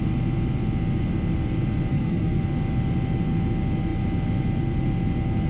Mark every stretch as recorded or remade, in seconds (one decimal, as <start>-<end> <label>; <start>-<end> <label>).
0.0-1.9 recorded; 1.9-2.4 remade; 2.4-5.5 recorded